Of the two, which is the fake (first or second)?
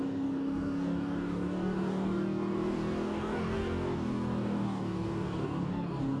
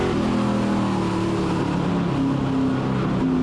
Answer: first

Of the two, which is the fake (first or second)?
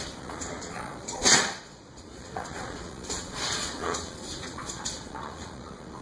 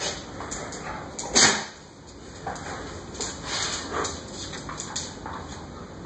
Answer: first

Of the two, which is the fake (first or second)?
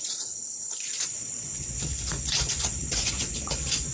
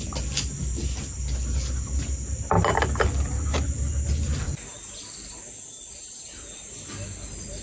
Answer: first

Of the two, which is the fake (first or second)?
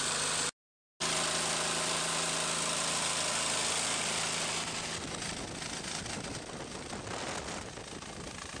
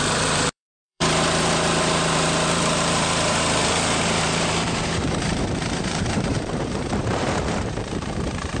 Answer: second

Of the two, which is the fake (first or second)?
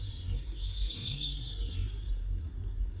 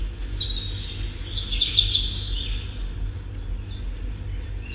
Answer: first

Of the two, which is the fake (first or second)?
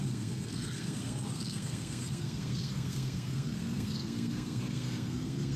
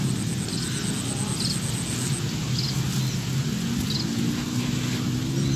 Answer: first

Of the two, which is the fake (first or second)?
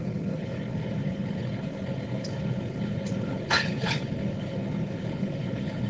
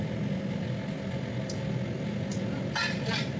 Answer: first